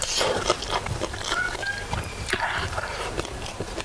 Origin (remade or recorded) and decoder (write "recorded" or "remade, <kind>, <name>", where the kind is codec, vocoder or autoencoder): recorded